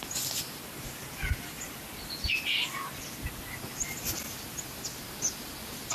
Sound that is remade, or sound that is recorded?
recorded